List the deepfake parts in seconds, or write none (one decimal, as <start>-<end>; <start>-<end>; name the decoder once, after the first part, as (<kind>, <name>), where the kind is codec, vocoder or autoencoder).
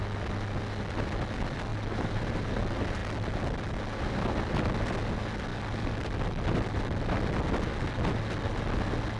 1.7-2.6 (vocoder, BigVGAN v2)